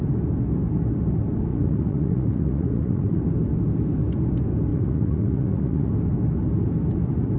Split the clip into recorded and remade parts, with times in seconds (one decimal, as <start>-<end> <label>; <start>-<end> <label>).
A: 0.0-1.5 recorded; 1.5-3.2 remade; 3.2-4.7 recorded; 4.7-5.9 remade; 5.9-7.4 recorded